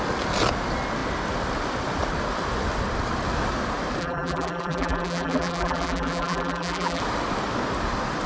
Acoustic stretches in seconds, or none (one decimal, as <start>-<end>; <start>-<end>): 0.0-4.0; 7.0-8.3